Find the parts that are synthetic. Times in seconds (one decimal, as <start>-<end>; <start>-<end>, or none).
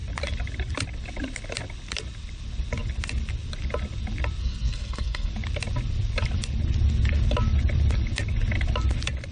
4.4-5.3